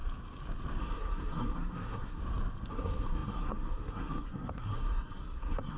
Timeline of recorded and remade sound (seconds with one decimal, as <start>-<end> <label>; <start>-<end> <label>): 0.0-0.8 recorded; 0.8-2.2 remade; 2.2-2.7 recorded; 2.7-5.8 remade

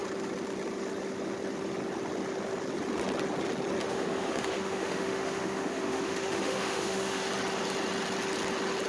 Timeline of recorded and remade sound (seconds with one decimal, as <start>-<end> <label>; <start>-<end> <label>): 0.0-3.8 recorded; 3.8-7.3 remade; 7.3-8.9 recorded